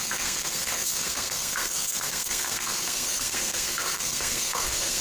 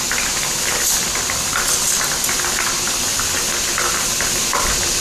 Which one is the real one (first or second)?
second